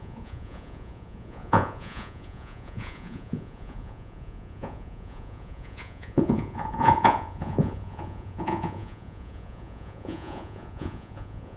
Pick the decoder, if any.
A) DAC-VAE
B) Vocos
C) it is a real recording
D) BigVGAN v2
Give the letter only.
B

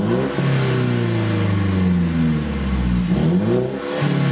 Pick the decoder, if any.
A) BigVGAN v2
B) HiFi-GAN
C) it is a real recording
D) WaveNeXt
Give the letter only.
C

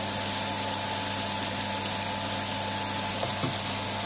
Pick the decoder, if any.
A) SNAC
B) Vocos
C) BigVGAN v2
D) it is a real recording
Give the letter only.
D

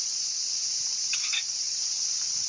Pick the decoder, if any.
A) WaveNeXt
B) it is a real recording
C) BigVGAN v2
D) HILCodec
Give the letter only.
A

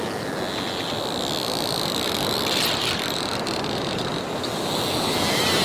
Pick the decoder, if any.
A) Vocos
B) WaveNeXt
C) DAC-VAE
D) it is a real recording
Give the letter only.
D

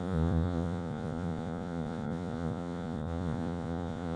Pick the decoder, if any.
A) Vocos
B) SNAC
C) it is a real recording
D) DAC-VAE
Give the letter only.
A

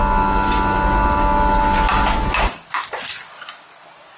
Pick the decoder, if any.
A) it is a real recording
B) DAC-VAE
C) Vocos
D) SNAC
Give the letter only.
A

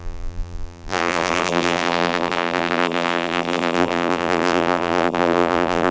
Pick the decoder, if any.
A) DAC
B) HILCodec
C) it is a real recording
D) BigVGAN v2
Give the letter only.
D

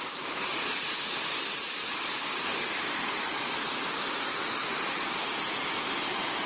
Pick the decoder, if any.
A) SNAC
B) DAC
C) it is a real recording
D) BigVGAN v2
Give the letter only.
D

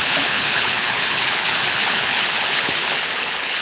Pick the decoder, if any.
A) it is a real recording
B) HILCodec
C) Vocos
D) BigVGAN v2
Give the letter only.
B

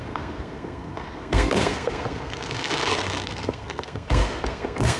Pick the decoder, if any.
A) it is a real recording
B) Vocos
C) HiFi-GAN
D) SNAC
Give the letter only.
D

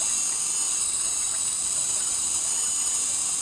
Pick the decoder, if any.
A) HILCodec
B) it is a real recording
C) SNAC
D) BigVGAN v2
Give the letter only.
B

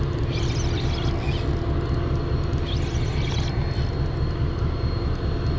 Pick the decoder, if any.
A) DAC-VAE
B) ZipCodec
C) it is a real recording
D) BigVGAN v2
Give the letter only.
C